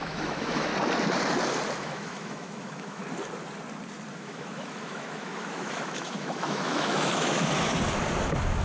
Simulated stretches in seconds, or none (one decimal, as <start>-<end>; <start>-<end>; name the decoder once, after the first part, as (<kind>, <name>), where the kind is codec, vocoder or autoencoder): 0.0-0.7 (autoencoder, DAC-VAE); 1.8-3.0; 4.1-7.7